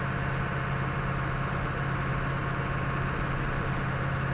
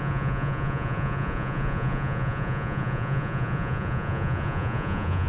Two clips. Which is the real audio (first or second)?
first